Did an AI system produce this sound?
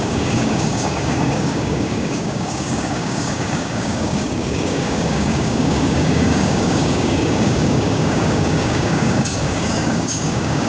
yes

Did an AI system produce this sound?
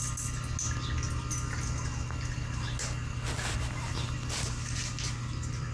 no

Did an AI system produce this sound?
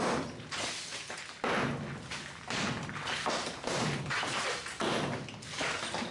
no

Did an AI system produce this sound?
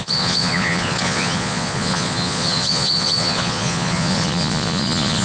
yes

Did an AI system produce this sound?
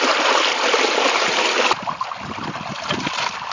no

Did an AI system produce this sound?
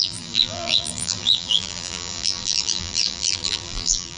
yes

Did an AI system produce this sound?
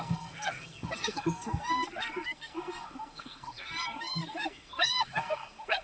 yes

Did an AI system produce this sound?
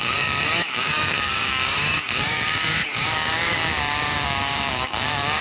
yes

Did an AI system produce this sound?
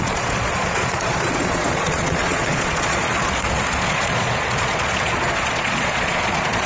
yes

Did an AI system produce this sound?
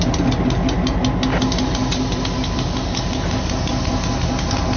no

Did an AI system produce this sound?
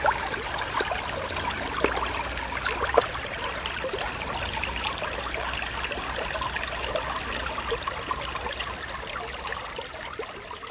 no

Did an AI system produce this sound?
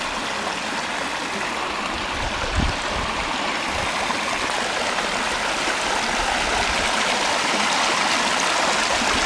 no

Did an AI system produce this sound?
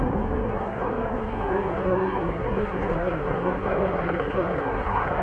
yes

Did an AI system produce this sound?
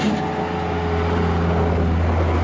no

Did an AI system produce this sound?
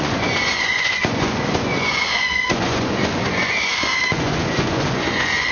yes